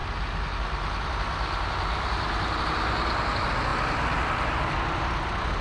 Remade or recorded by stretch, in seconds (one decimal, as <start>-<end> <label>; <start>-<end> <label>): 0.0-5.6 recorded